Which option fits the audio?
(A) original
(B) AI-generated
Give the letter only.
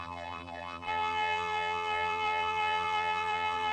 B